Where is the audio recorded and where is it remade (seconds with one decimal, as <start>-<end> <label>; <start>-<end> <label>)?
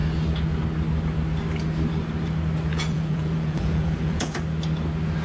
0.0-2.7 recorded; 2.7-4.4 remade; 4.4-5.2 recorded